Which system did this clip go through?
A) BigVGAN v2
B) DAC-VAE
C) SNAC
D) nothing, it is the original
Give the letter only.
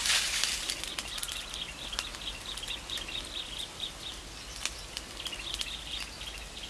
D